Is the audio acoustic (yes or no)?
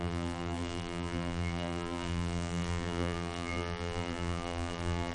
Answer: no